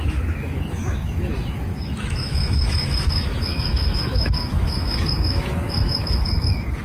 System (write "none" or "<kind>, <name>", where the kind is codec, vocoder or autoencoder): autoencoder, DAC-VAE